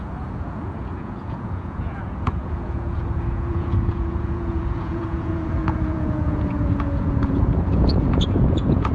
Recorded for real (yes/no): no